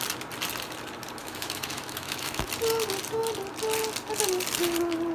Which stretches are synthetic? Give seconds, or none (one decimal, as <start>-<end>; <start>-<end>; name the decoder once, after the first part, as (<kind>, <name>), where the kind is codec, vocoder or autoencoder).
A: 1.2-2.5 (autoencoder, DAC-VAE)